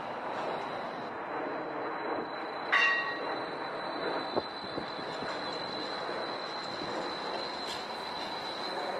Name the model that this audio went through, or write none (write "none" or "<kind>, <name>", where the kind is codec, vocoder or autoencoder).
none